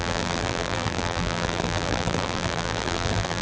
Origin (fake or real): fake